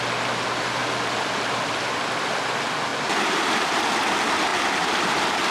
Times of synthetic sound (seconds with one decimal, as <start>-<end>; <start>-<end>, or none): 0.8-2.0; 2.9-4.1